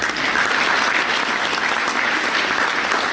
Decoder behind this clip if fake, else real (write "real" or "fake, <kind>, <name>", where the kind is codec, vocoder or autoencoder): real